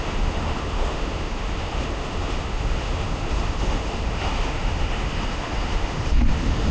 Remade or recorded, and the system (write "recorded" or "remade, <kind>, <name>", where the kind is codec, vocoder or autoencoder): remade, autoencoder, DAC-VAE